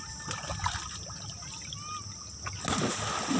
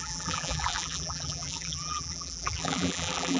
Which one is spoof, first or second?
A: second